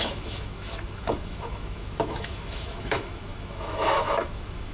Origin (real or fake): fake